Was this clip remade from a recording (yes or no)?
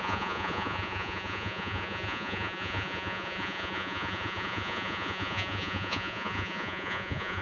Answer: yes